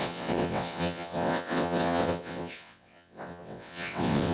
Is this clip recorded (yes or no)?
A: no